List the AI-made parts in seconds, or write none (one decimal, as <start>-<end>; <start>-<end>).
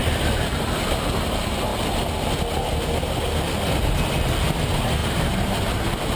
0.0-1.7; 4.6-6.2